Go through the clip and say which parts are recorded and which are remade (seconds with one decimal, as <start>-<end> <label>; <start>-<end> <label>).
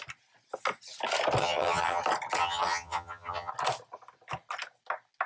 0.0-1.4 recorded; 1.4-2.0 remade; 2.0-2.4 recorded; 2.4-3.5 remade; 3.5-5.3 recorded